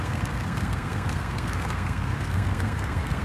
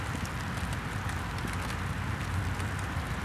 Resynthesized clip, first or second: first